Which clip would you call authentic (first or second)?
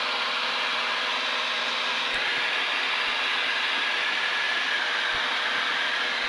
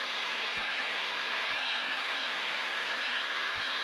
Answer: first